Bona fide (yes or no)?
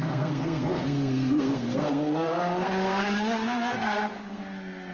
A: no